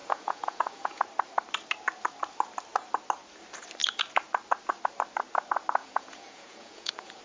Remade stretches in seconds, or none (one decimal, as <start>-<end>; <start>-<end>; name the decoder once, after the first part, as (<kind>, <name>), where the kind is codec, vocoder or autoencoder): 0.0-1.0 (vocoder, Vocos); 5.8-7.2